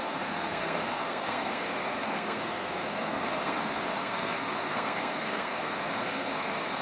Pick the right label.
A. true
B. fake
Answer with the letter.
B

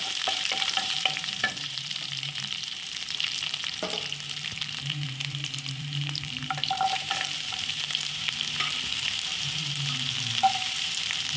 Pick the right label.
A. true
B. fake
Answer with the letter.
B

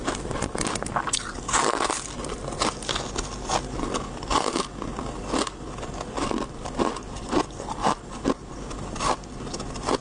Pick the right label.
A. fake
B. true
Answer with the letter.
B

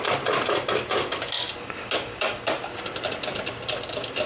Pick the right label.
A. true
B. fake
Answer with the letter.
A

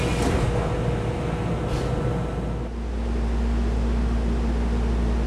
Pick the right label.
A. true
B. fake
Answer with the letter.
A